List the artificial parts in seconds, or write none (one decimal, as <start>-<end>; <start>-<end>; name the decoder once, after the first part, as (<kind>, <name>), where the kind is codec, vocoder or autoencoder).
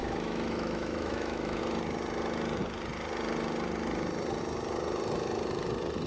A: 0.0-1.6 (autoencoder, DAC-VAE)